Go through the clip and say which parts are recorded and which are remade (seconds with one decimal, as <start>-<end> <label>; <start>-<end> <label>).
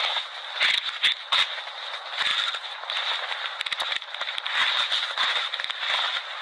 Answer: 0.0-2.3 recorded; 2.3-4.7 remade; 4.7-6.4 recorded